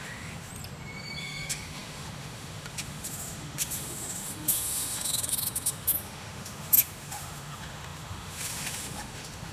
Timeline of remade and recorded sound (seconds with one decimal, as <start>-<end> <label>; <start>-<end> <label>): 0.0-0.5 remade; 0.5-1.2 recorded; 1.2-9.5 remade